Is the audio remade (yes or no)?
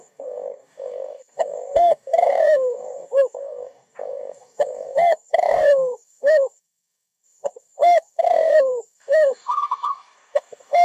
yes